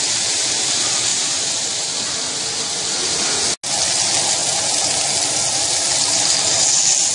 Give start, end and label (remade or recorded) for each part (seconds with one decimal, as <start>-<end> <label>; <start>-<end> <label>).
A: 0.0-1.1 recorded; 1.1-1.7 remade; 1.7-7.1 recorded